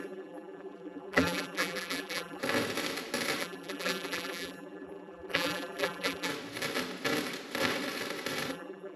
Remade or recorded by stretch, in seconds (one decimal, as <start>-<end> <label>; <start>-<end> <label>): 0.0-2.4 remade; 2.4-3.4 recorded; 3.4-6.3 remade; 6.3-8.5 recorded; 8.5-9.0 remade